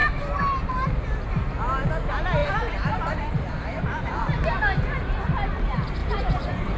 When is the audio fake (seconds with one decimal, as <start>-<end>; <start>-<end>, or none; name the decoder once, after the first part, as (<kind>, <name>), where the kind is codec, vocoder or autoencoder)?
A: 0.0-0.7 (vocoder, BigVGAN v2); 2.4-4.1; 6.0-6.8